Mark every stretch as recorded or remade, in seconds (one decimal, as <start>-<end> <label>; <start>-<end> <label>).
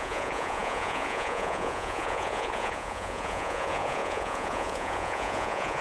0.0-5.8 remade